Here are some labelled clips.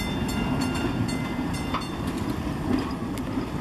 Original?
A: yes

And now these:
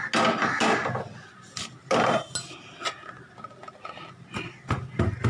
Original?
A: yes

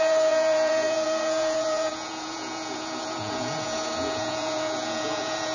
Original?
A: no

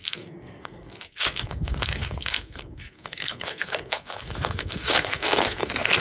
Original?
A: no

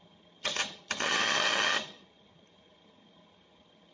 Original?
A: no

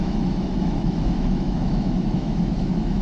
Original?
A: no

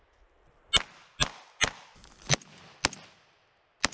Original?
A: yes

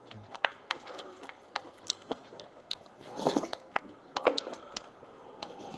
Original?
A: no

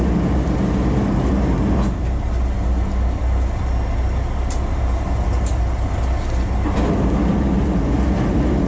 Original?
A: yes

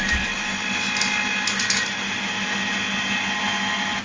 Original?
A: yes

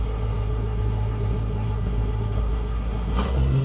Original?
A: no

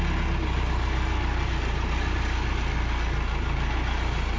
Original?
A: yes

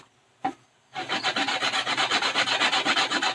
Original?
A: yes